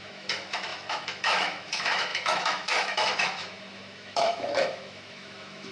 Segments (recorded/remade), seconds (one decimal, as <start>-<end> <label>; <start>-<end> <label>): 0.0-5.7 remade